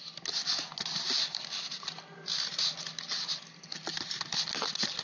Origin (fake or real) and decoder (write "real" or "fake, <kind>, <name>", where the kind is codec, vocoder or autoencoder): real